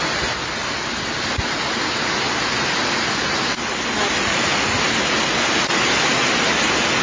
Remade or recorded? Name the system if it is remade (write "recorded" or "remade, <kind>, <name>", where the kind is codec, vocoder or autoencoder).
recorded